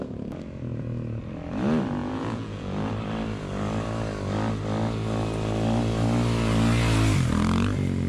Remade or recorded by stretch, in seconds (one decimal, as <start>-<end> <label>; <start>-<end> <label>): 0.0-2.0 recorded; 2.0-2.9 remade; 2.9-8.1 recorded